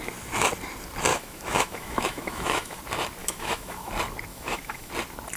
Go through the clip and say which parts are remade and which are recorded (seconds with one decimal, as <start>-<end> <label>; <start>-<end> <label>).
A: 0.0-1.1 recorded; 1.1-2.8 remade; 2.8-3.2 recorded; 3.2-3.9 remade; 3.9-4.3 recorded; 4.3-4.9 remade; 4.9-5.4 recorded